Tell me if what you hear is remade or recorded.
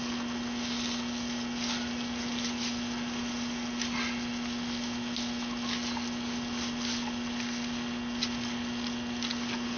recorded